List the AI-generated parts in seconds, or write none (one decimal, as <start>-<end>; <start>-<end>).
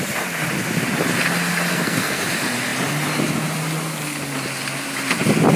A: 1.7-2.2